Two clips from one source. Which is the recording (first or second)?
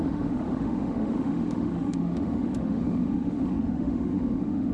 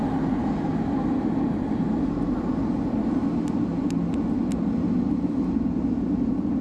second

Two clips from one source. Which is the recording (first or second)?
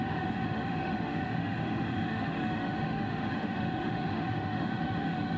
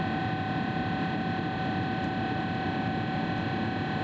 second